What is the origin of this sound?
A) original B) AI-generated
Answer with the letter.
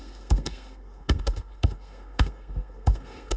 B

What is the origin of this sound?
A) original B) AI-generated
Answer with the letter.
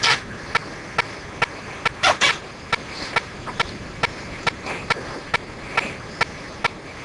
A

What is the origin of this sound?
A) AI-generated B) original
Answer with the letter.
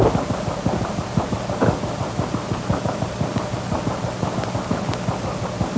B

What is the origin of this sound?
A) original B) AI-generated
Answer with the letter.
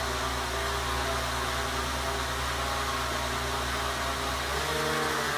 A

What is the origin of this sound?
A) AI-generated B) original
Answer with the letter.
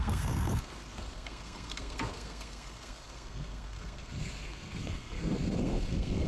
A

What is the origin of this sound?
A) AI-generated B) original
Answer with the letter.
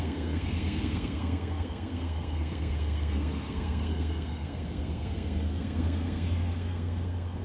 A